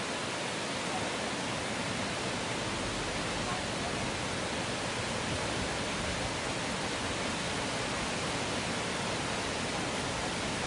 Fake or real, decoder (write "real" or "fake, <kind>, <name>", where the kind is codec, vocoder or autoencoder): real